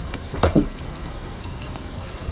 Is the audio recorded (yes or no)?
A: no